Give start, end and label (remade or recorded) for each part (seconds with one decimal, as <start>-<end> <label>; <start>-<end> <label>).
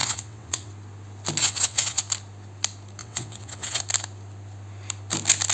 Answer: 0.0-0.7 remade; 0.7-1.4 recorded; 1.4-2.0 remade; 2.0-3.0 recorded; 3.0-3.8 remade; 3.8-5.5 recorded